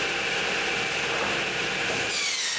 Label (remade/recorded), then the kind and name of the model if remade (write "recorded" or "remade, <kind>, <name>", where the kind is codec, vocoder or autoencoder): recorded